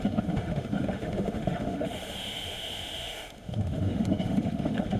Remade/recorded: remade